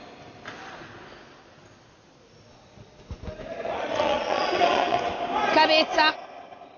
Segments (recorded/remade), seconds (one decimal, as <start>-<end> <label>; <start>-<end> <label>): 0.0-3.5 recorded; 3.5-5.0 remade; 5.0-6.8 recorded

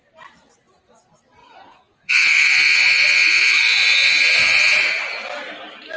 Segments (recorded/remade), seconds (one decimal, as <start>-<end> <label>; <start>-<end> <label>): 0.0-1.4 recorded; 1.4-5.0 remade; 5.0-6.0 recorded

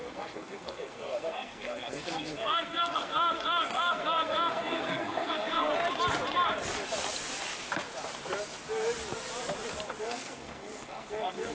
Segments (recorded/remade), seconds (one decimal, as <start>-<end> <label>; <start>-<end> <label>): 0.0-5.7 remade; 5.7-10.0 recorded; 10.0-11.5 remade

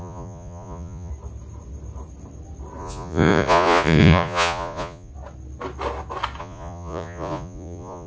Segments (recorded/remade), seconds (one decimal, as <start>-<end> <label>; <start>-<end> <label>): 0.0-1.1 remade; 1.1-2.8 recorded; 2.8-5.1 remade; 5.1-6.4 recorded; 6.4-8.1 remade

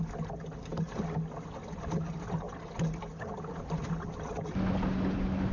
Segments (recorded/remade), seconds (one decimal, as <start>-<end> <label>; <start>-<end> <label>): 0.0-5.5 recorded

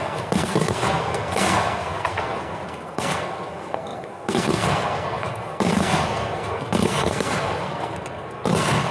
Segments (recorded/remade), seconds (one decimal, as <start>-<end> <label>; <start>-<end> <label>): 0.0-8.9 remade

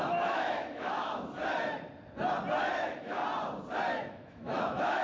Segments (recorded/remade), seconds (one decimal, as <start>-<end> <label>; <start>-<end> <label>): 0.0-1.4 remade; 1.4-2.6 recorded; 2.6-3.2 remade; 3.2-3.9 recorded; 3.9-5.0 remade